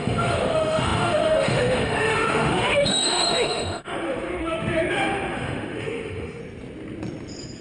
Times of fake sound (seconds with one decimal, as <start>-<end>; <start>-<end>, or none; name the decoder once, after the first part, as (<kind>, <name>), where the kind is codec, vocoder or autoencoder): 0.0-6.4 (autoencoder, DAC-VAE)